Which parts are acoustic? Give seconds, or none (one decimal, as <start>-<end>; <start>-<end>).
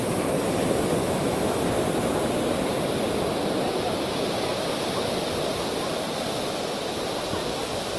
0.0-1.0; 1.6-8.0